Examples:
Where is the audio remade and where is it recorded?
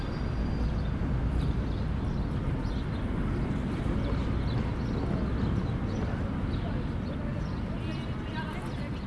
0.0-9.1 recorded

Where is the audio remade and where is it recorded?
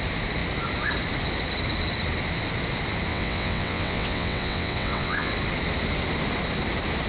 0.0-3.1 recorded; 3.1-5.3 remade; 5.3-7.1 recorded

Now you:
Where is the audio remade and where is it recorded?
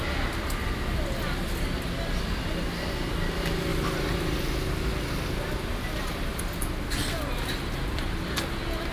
0.0-8.9 recorded